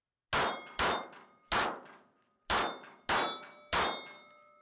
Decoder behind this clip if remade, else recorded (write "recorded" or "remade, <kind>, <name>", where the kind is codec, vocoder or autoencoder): recorded